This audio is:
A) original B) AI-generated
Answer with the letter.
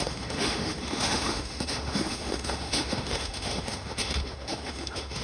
B